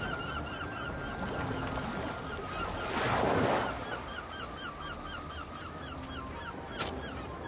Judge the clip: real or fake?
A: real